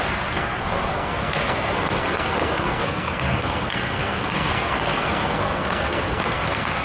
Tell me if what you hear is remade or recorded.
remade